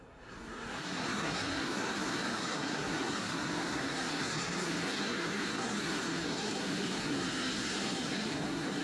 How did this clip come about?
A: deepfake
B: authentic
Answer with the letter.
A